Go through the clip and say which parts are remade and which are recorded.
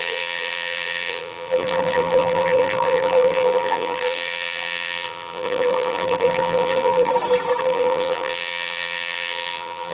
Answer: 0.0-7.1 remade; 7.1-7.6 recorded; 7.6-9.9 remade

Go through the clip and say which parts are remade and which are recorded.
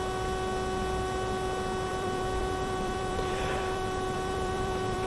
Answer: 0.0-1.9 recorded; 1.9-5.1 remade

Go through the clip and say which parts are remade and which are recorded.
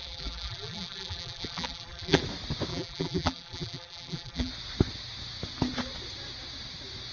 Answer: 0.0-2.2 remade; 2.2-2.7 recorded; 2.7-4.5 remade; 4.5-7.1 recorded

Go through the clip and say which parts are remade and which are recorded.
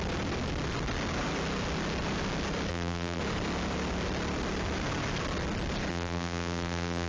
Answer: 0.0-2.7 recorded; 2.7-3.2 remade; 3.2-5.9 recorded; 5.9-7.1 remade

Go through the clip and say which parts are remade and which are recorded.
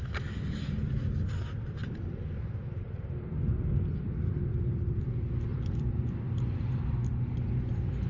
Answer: 0.0-4.5 recorded; 4.5-5.1 remade; 5.1-5.5 recorded; 5.5-7.1 remade; 7.1-8.1 recorded